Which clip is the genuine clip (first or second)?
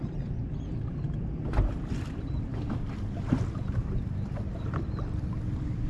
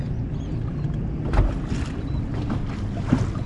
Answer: second